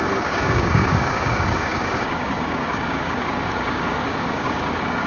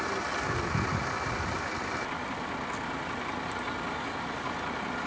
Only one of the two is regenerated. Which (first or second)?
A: first